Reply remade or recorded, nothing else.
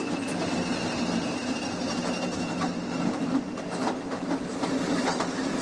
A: recorded